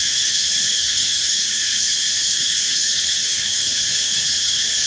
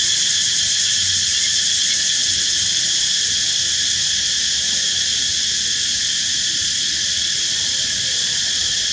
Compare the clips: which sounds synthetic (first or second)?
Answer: first